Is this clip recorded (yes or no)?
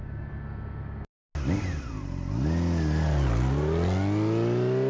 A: yes